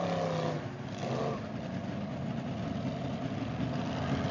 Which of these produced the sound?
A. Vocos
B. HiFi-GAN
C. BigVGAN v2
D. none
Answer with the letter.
D